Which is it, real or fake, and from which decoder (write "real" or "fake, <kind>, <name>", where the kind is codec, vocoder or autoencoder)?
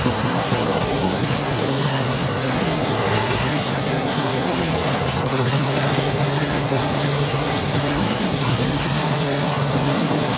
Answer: fake, codec, SNAC